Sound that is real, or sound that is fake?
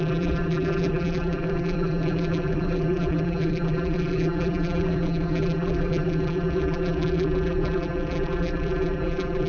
fake